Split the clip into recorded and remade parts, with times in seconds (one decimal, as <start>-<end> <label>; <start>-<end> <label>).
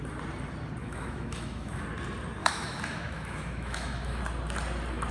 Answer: 0.0-0.8 recorded; 0.8-1.8 remade; 1.8-2.4 recorded; 2.4-4.2 remade; 4.2-5.1 recorded